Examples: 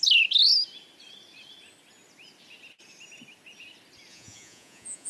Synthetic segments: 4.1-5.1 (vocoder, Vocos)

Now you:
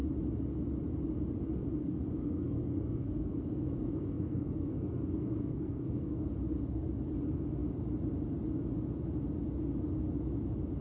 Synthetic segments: 1.8-6.3 (codec, SNAC)

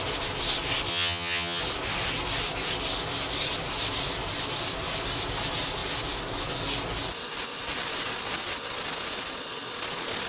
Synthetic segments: 0.9-1.6 (vocoder, HiFi-GAN)

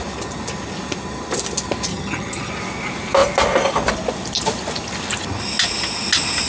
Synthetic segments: 1.9-2.5 (vocoder, HiFi-GAN)

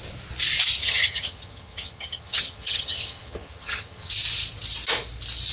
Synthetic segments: 0.8-4.1 (vocoder, HiFi-GAN)

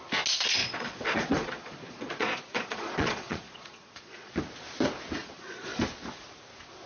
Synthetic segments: 0.6-4.3 (vocoder, Vocos); 5.2-5.8

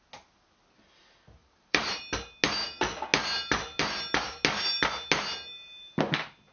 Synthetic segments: 1.4-2.0 (vocoder, BigVGAN v2)